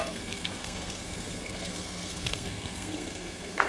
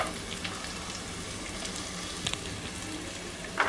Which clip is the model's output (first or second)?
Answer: first